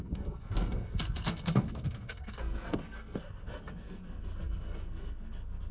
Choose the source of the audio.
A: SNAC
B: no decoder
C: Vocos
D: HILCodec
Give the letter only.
A